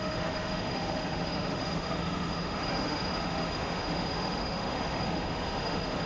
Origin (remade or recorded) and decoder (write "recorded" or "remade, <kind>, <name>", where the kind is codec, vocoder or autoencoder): remade, autoencoder, DAC-VAE